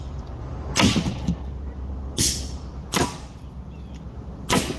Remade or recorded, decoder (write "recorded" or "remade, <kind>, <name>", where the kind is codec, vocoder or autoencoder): recorded